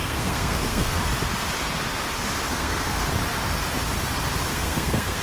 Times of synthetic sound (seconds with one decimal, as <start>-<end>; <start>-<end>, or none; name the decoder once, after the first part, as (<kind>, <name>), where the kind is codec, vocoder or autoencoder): 0.0-1.0 (codec, SNAC); 2.5-3.1; 4.5-5.2